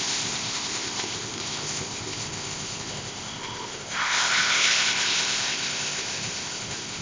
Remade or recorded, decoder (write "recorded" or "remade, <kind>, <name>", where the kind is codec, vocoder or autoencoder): remade, codec, ZipCodec